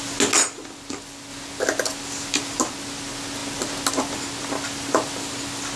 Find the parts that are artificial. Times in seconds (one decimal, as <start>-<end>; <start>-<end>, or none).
none